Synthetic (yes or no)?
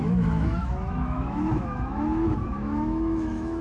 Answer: yes